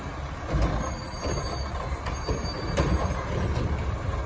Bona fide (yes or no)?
yes